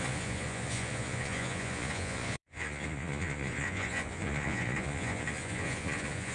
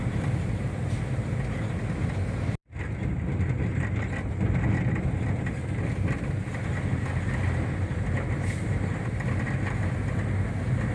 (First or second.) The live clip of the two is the second